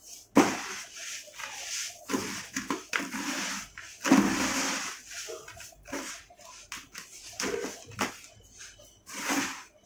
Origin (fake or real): real